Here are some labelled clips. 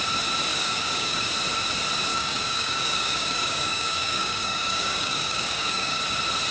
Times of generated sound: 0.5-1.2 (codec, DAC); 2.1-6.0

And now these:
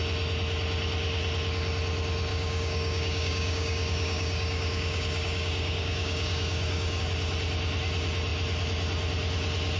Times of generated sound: 2.3-7.0 (codec, DAC)

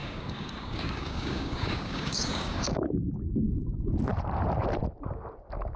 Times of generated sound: 0.0-3.5 (codec, DAC)

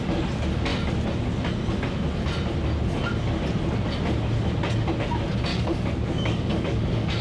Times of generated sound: 5.5-7.2 (codec, DAC)